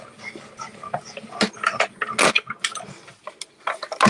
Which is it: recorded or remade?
recorded